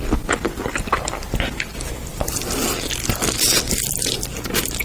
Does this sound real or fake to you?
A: real